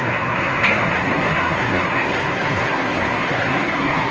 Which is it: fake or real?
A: fake